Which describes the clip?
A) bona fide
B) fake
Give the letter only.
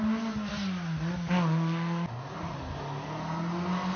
A